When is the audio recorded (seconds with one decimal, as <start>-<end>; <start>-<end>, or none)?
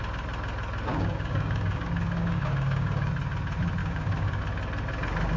0.0-0.9; 3.1-3.8; 4.4-5.4